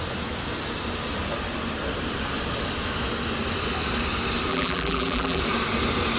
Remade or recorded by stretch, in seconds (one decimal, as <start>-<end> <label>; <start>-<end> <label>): 0.0-4.5 recorded; 4.5-5.4 remade; 5.4-6.2 recorded